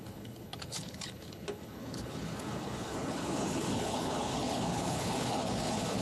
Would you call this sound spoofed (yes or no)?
yes